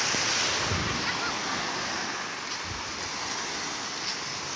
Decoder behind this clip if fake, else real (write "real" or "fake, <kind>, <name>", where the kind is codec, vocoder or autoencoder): real